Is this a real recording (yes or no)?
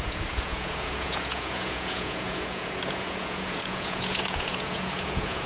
no